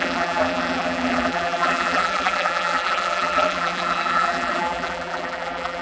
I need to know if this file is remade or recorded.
remade